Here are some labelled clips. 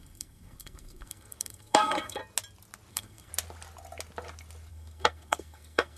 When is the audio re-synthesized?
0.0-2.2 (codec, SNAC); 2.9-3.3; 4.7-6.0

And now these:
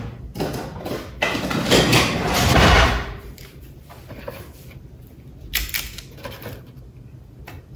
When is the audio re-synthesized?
1.9-5.0 (vocoder, BigVGAN v2)